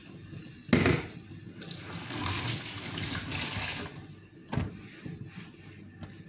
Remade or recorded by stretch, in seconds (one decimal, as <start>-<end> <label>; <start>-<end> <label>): 0.0-6.3 recorded